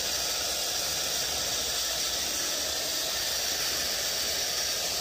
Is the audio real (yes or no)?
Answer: yes